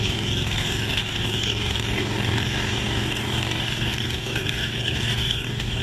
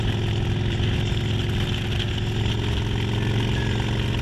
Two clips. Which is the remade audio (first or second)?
first